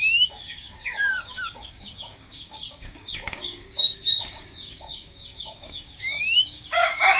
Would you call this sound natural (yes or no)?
no